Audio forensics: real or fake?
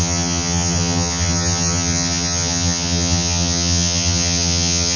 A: fake